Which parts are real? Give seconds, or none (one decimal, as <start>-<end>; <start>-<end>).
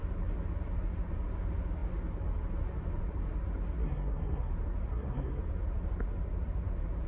0.0-3.8; 4.5-4.9; 5.4-7.1